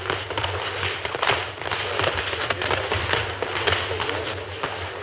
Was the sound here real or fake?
real